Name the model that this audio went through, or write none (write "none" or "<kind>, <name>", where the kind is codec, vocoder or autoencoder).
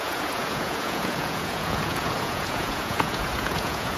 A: vocoder, Vocos